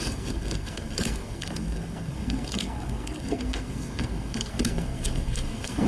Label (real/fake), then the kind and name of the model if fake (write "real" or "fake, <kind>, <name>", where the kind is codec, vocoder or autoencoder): fake, codec, SNAC